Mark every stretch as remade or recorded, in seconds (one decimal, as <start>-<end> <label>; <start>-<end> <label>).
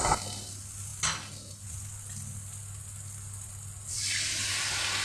0.0-5.0 recorded